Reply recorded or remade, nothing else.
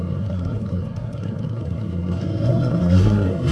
remade